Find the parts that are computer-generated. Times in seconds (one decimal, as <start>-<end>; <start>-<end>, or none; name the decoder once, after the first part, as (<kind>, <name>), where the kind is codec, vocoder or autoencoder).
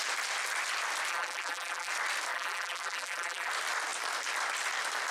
1.1-1.9 (vocoder, BigVGAN v2); 2.3-3.5